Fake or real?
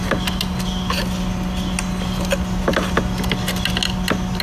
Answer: real